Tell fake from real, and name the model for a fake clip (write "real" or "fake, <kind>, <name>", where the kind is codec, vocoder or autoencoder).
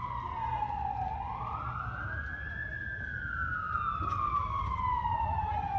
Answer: real